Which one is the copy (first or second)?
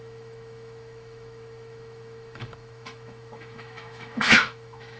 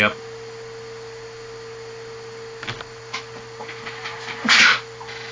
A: first